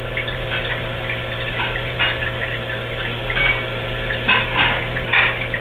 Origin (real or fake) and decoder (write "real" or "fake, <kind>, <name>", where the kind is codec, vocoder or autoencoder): real